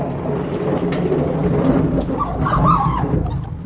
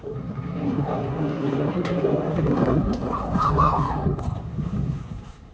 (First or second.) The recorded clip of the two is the first